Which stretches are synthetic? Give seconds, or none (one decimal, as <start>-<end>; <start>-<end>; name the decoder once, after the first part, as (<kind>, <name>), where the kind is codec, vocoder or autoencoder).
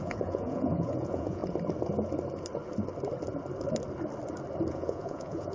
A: 0.0-1.4 (vocoder, Vocos); 4.7-5.5